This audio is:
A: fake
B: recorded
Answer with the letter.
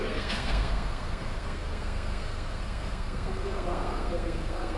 A